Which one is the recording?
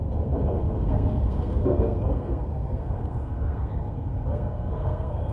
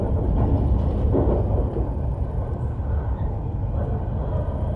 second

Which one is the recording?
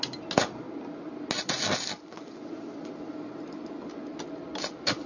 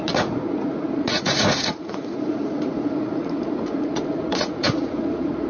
first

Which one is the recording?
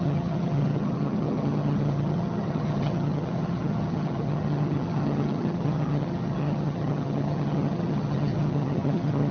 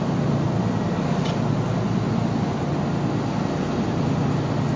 second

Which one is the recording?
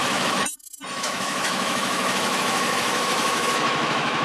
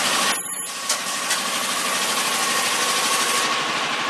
second